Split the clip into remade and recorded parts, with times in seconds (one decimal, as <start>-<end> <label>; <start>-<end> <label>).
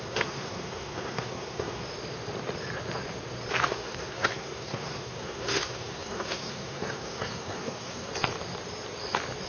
0.0-1.8 remade; 1.8-3.7 recorded; 3.7-8.1 remade; 8.1-9.5 recorded